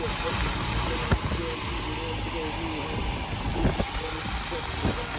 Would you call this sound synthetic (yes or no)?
no